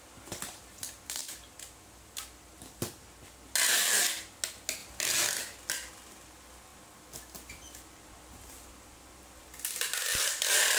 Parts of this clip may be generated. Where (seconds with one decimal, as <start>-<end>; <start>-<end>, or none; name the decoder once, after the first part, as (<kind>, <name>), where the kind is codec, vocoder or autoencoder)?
none

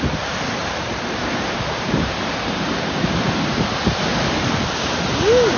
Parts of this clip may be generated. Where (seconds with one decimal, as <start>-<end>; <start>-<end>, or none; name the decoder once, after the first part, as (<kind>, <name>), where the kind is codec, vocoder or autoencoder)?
0.6-4.0 (vocoder, BigVGAN v2)

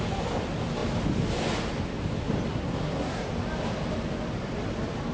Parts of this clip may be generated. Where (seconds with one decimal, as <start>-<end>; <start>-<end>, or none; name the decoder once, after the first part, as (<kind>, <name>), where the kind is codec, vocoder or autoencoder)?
2.5-3.3 (codec, SNAC)

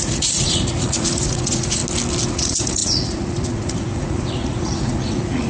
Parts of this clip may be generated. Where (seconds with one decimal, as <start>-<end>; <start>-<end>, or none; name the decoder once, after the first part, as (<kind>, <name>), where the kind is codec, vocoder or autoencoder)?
0.0-1.8 (vocoder, Vocos); 2.3-5.5

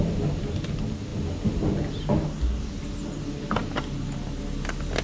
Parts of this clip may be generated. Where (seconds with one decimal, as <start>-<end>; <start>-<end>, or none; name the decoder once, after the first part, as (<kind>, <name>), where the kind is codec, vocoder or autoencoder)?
none

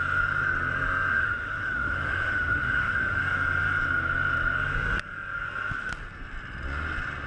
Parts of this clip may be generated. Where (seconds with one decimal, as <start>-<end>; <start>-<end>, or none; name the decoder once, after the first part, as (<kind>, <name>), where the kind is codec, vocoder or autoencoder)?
1.1-3.2 (autoencoder, DAC-VAE)

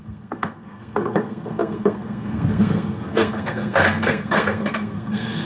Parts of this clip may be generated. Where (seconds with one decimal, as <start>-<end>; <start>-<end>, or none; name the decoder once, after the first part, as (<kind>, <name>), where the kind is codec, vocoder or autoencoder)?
0.0-5.5 (codec, SNAC)

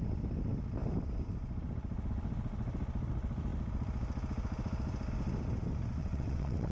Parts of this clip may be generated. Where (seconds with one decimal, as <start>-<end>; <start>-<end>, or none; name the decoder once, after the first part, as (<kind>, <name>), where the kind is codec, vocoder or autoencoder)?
6.0-6.7 (vocoder, WaveNeXt)